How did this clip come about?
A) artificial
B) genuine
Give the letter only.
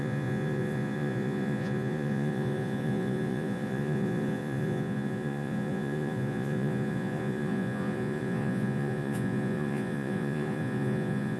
A